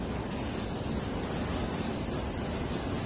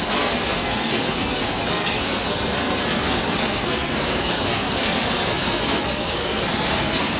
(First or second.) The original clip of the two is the first